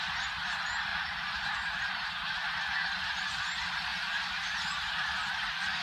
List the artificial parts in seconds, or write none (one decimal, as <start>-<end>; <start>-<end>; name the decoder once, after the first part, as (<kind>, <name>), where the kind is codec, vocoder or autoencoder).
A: 0.9-2.1 (vocoder, BigVGAN v2)